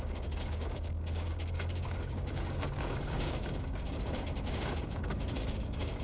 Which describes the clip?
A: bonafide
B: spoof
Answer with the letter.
B